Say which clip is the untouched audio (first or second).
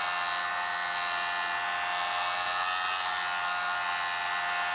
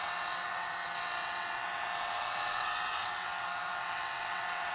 first